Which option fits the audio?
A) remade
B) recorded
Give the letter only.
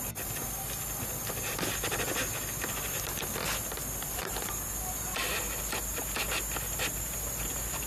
B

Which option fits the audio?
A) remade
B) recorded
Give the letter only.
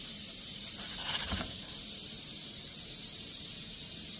A